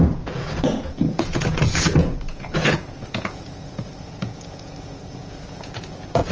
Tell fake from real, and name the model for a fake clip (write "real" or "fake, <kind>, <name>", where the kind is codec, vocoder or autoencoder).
fake, vocoder, Vocos